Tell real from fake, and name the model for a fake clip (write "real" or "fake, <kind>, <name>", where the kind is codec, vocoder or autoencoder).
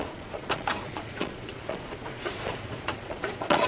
fake, vocoder, Vocos